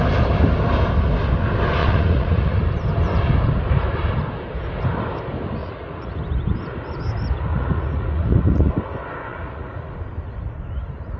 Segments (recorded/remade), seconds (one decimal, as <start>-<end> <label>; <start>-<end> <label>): 0.0-1.8 recorded; 1.8-2.6 remade; 2.6-5.6 recorded; 5.6-6.2 remade; 6.2-7.5 recorded; 7.5-8.7 remade; 8.7-9.3 recorded; 9.3-9.9 remade; 9.9-11.2 recorded